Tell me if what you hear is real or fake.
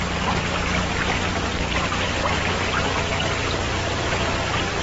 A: real